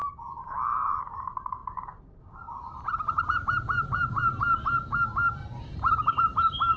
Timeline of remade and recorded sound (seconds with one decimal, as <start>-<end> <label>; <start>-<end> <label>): 0.0-6.8 remade